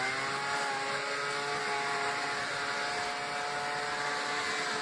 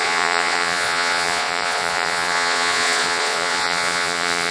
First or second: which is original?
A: first